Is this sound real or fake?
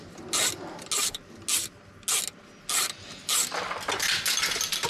real